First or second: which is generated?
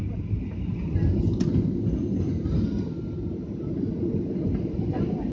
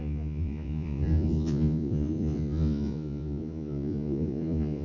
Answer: second